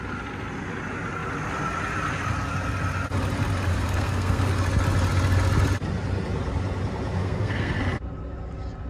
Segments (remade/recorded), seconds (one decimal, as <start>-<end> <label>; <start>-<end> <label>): 0.0-3.7 recorded; 3.7-4.5 remade; 4.5-7.2 recorded; 7.2-7.8 remade; 7.8-8.9 recorded

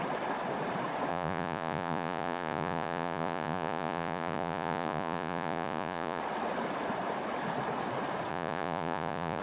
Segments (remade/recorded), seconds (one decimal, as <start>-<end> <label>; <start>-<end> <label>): 0.0-1.1 recorded; 1.1-6.2 remade; 6.2-8.3 recorded; 8.3-9.4 remade

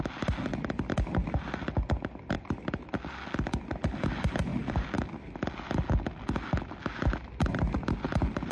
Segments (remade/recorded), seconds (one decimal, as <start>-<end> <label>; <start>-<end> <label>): 0.0-4.5 recorded; 4.5-5.3 remade; 5.3-8.5 recorded

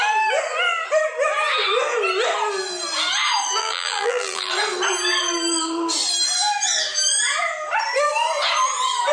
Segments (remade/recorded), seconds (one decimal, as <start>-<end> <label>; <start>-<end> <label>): 0.0-3.6 recorded; 3.6-4.5 remade; 4.5-9.1 recorded

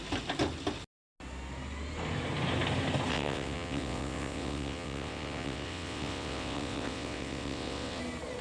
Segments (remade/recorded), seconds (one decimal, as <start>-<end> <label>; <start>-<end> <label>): 0.0-3.1 recorded; 3.1-8.0 remade; 8.0-8.4 recorded

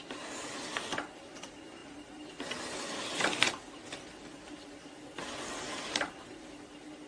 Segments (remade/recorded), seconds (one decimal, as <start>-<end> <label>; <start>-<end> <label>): 0.0-7.1 recorded